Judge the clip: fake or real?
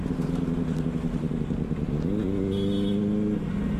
real